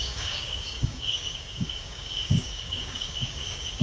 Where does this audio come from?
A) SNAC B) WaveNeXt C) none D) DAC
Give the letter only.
D